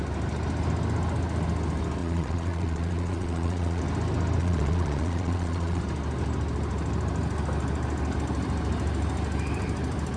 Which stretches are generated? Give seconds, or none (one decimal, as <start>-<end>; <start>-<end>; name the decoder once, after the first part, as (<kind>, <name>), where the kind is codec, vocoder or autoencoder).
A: 2.0-3.8 (vocoder, Vocos); 4.4-5.8